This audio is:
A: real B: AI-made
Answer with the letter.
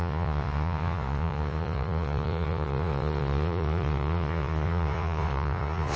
B